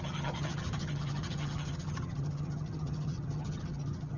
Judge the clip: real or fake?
fake